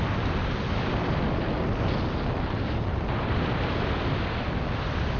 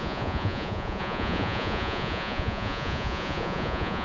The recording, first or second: first